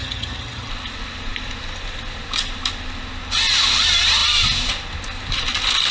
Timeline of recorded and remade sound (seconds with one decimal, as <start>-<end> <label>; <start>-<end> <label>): 0.0-0.7 remade; 0.7-5.9 recorded

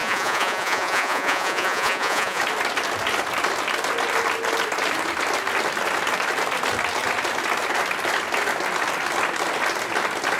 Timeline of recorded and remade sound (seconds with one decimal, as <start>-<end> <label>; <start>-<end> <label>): 0.0-2.4 remade; 2.4-10.4 recorded

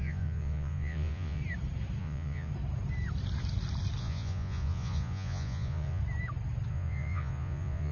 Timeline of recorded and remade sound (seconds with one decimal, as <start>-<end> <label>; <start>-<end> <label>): 0.0-1.4 remade; 1.4-2.0 recorded; 2.0-2.5 remade; 2.5-4.0 recorded; 4.0-6.0 remade; 6.0-6.7 recorded; 6.7-7.9 remade